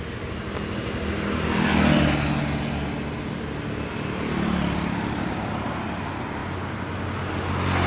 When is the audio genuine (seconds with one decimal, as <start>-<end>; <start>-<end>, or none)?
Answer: 0.0-7.9